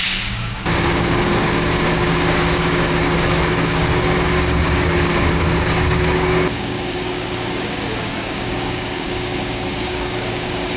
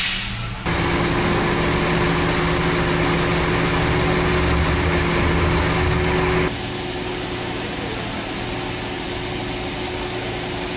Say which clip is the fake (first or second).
first